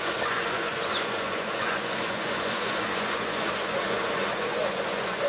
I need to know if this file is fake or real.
fake